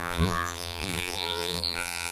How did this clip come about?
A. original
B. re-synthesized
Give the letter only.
B